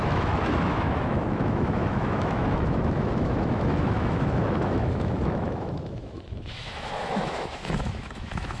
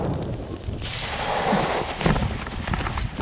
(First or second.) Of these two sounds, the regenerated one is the first